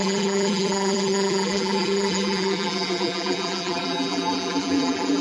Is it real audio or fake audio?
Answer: fake